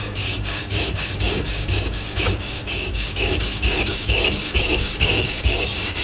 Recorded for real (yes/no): no